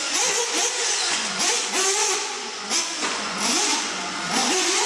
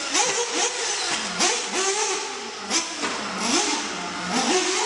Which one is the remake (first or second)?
first